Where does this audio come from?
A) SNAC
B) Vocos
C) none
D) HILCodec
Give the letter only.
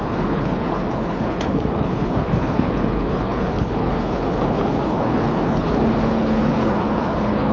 D